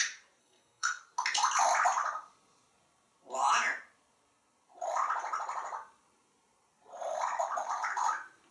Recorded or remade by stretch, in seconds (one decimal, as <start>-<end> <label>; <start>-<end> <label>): 0.0-0.4 recorded; 0.4-1.0 remade; 1.0-8.5 recorded